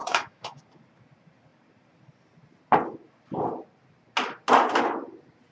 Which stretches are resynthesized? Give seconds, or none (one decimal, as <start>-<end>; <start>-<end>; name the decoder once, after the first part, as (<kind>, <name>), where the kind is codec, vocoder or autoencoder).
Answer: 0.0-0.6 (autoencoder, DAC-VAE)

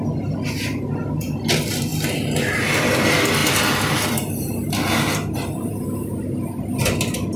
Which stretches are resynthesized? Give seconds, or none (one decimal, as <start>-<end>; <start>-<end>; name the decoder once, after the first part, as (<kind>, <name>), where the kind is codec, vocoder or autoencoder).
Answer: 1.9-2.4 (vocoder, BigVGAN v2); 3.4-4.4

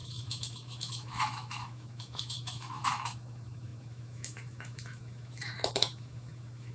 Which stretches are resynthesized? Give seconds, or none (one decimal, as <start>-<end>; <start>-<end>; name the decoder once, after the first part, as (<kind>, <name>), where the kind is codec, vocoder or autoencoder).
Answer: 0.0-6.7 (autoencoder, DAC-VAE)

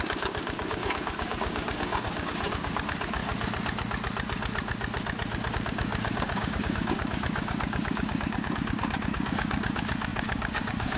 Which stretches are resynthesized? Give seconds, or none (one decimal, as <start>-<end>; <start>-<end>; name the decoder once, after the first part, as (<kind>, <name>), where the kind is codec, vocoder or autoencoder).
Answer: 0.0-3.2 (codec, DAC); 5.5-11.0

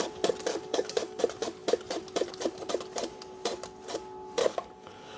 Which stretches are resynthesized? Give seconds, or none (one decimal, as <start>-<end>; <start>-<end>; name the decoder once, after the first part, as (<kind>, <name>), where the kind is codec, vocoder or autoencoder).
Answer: 0.5-1.2 (codec, DAC); 4.4-5.2

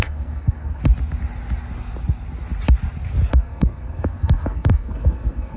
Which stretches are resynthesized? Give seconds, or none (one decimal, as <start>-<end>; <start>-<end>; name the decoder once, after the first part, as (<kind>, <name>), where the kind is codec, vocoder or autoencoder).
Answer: 0.0-0.8 (codec, SNAC); 3.3-5.6